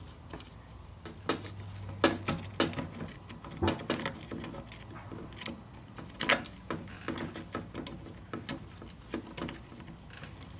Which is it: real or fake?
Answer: real